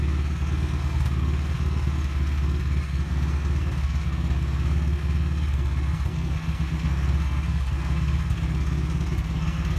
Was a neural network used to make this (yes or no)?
yes